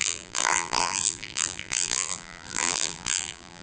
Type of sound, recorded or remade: remade